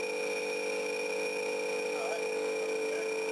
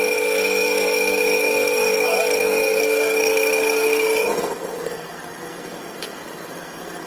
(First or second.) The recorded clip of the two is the first